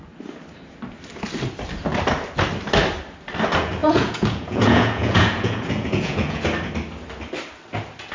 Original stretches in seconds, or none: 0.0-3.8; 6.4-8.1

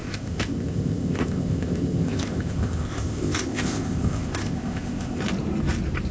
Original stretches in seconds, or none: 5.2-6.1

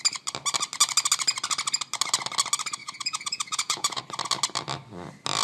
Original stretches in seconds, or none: 0.0-2.8; 4.0-5.4

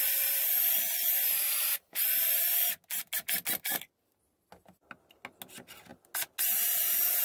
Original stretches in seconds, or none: 0.0-7.2

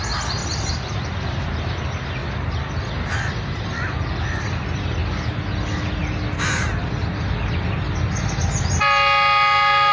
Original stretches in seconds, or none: 0.0-9.9